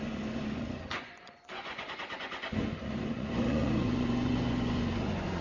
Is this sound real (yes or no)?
no